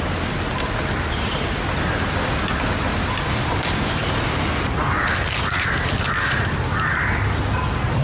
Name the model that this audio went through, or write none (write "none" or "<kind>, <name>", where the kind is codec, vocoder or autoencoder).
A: none